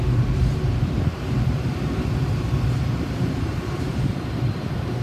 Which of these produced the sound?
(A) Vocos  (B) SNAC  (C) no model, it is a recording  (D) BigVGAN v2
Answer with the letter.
D